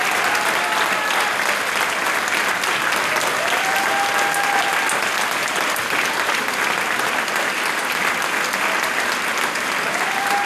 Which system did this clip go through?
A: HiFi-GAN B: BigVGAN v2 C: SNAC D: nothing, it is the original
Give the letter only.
D